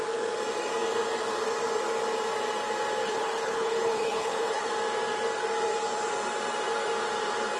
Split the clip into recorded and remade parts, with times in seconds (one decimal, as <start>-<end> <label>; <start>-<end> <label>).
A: 0.0-3.0 recorded; 3.0-4.7 remade; 4.7-7.6 recorded